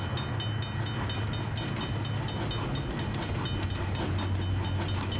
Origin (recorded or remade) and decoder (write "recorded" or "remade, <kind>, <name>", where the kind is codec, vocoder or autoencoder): recorded